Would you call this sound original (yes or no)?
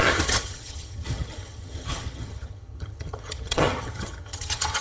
no